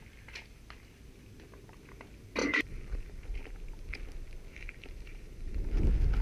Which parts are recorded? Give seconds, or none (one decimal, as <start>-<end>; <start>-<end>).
0.0-2.4; 3.4-4.5; 5.6-6.2